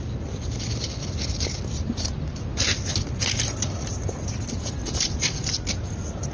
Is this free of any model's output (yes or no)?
yes